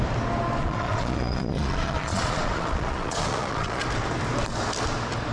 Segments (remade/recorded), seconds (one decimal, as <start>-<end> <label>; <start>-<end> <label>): 0.0-0.6 recorded; 0.6-3.8 remade; 3.8-5.3 recorded